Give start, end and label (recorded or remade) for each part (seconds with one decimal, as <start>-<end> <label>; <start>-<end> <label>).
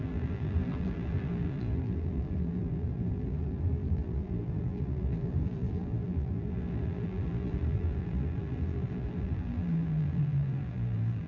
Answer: 0.0-11.3 remade